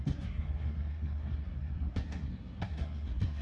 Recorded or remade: remade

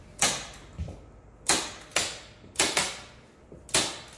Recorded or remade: recorded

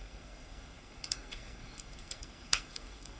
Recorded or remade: remade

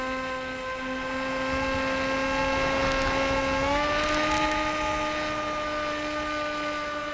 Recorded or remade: recorded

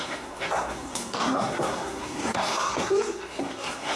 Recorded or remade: remade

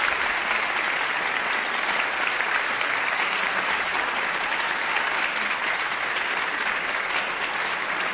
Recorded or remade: recorded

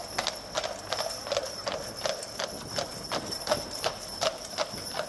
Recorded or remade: recorded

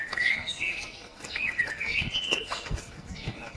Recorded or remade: remade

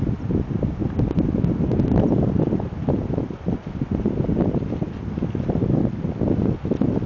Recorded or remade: recorded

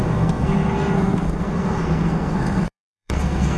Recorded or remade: remade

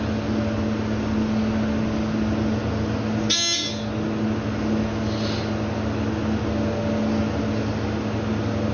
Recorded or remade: recorded